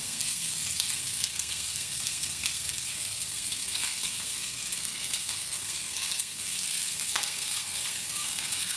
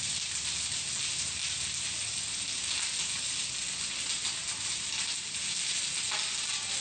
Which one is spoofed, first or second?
first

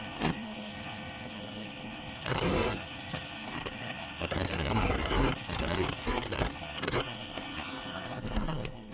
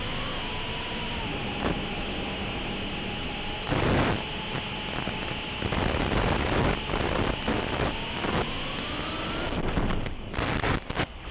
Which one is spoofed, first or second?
first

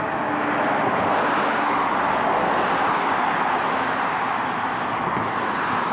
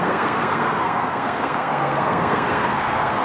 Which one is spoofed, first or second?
second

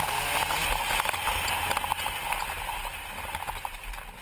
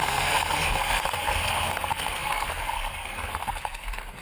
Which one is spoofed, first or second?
second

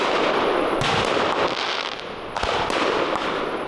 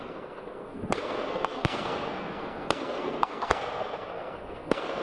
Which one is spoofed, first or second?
second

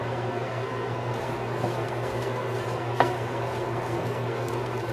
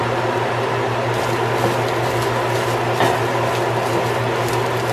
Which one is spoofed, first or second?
first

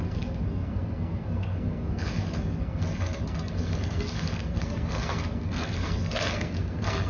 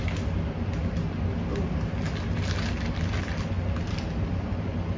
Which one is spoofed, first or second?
first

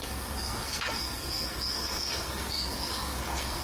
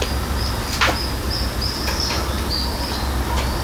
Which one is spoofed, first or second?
first